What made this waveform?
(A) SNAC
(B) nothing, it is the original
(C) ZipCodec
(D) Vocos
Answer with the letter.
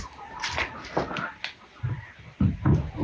B